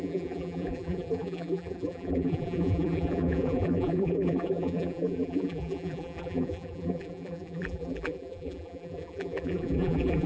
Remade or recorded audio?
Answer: remade